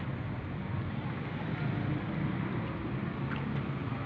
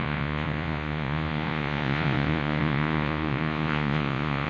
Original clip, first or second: first